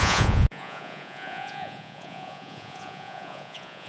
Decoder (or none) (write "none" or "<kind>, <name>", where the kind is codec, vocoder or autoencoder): vocoder, Vocos